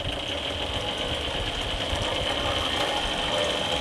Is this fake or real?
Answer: real